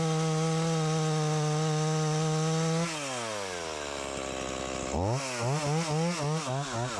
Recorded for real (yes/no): yes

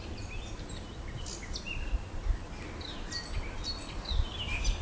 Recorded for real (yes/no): yes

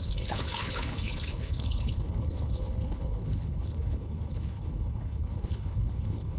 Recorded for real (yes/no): no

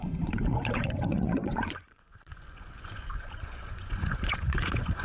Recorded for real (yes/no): no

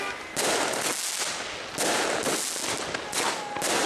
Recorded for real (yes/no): yes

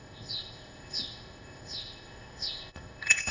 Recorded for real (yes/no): no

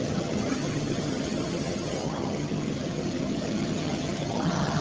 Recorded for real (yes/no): no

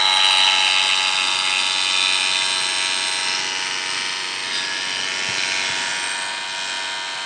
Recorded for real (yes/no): yes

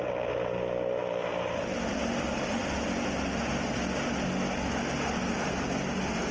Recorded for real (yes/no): yes